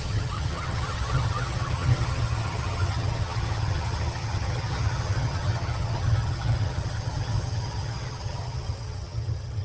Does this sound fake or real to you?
fake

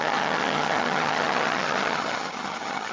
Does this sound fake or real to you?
fake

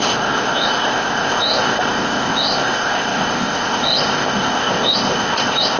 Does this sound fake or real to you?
fake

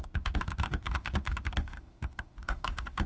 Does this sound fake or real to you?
fake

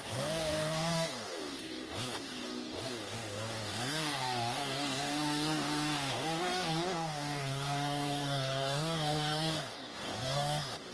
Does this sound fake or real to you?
fake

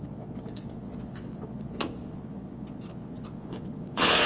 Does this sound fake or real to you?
fake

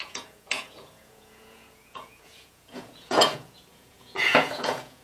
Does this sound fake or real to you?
fake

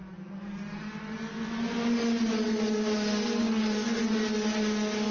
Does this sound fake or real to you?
real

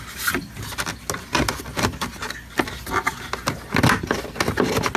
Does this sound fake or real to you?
real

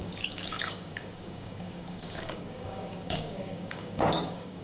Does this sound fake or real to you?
fake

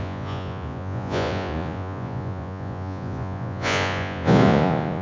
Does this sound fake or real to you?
fake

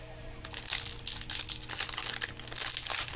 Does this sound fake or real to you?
real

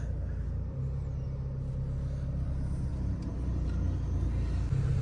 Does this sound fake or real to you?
real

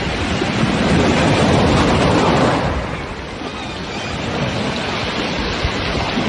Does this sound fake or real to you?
real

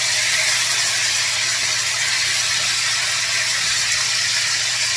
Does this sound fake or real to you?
real